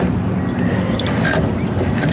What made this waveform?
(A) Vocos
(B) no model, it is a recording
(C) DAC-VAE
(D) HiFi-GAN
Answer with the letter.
B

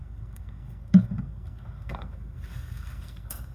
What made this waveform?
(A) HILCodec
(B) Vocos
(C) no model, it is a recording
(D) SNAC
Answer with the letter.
D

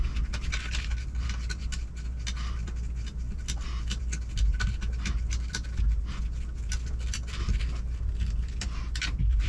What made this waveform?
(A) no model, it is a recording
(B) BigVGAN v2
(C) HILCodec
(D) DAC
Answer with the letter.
A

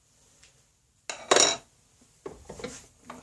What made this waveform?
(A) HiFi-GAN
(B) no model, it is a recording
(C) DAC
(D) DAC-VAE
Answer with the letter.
B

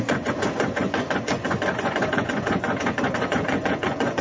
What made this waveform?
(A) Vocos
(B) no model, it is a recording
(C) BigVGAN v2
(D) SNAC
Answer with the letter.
A